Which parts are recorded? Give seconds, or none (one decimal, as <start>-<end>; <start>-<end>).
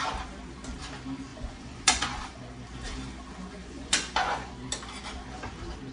0.0-1.3; 2.2-3.6; 4.5-5.9